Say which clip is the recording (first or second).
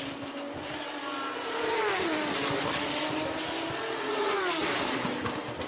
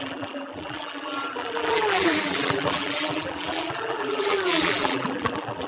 first